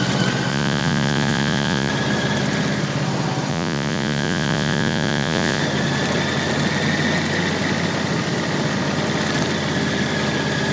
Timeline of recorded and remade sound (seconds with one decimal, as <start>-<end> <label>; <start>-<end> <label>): 0.0-0.5 recorded; 0.5-1.9 remade; 1.9-3.5 recorded; 3.5-5.6 remade; 5.6-10.7 recorded

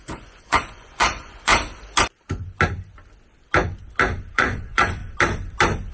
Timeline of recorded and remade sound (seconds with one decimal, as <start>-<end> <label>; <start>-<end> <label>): 0.0-1.5 remade; 1.5-4.3 recorded; 4.3-5.0 remade; 5.0-5.9 recorded

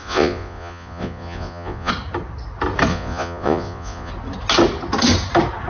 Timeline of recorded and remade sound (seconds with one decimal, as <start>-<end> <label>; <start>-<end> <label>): 0.0-1.9 remade; 1.9-2.9 recorded; 2.9-4.1 remade; 4.1-5.7 recorded

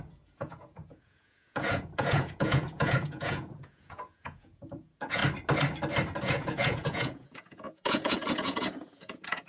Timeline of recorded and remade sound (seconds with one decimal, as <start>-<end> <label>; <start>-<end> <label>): 0.0-5.2 remade; 5.2-6.2 recorded; 6.2-9.5 remade

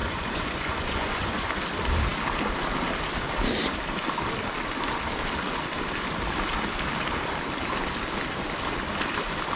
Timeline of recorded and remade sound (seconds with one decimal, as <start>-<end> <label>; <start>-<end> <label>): 0.0-1.5 remade; 1.5-9.6 recorded

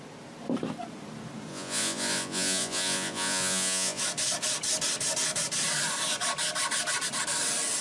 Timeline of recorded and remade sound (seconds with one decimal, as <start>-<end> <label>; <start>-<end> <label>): 0.0-1.5 recorded; 1.5-4.0 remade; 4.0-7.8 recorded

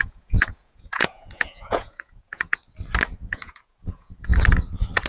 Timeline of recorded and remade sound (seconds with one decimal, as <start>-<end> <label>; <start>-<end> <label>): 0.0-2.6 remade; 2.6-3.3 recorded; 3.3-4.3 remade; 4.3-5.1 recorded